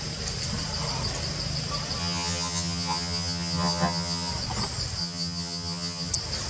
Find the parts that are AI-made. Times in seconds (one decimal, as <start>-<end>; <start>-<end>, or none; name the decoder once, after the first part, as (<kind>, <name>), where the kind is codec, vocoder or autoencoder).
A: 2.0-4.3 (vocoder, HiFi-GAN); 5.0-6.1